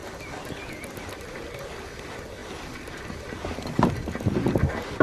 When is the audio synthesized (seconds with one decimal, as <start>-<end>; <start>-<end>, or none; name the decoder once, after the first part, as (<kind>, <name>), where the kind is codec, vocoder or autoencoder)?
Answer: none